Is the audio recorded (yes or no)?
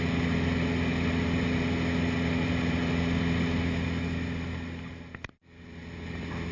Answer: yes